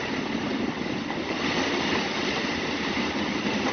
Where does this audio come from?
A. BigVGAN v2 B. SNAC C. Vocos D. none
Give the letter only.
D